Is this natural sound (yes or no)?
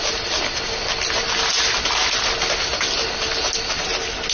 yes